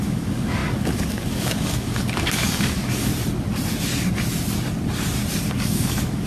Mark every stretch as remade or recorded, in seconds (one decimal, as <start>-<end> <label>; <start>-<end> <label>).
0.0-3.1 remade; 3.1-5.5 recorded; 5.5-6.3 remade